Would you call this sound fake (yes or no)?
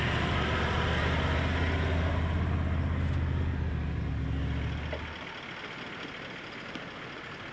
no